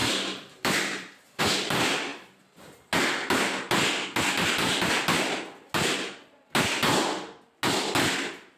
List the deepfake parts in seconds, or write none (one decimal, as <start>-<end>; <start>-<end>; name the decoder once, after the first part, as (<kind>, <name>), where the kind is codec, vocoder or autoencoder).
0.0-1.4 (vocoder, BigVGAN v2)